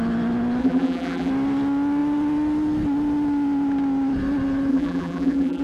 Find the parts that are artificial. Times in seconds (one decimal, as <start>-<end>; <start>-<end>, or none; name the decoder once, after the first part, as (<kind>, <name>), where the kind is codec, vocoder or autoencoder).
0.6-1.3 (vocoder, BigVGAN v2); 4.7-5.6

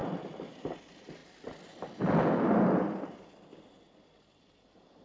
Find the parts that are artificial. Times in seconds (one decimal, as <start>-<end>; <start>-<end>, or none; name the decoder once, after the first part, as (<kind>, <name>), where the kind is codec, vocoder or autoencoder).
0.5-1.2 (vocoder, BigVGAN v2); 4.2-5.0

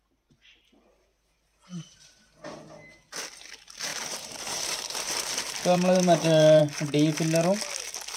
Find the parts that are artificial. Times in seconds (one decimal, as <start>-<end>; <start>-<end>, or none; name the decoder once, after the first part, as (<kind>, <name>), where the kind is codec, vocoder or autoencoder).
3.9-6.6 (vocoder, BigVGAN v2)

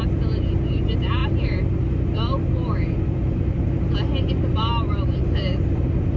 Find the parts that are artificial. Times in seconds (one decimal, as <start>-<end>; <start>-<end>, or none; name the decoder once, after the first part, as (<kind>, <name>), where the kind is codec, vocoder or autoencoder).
4.9-5.5 (vocoder, BigVGAN v2)

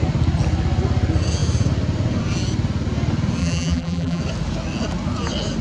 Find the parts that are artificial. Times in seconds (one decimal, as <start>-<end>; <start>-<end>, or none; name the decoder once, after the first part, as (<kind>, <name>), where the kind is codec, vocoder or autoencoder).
3.4-4.2 (vocoder, BigVGAN v2)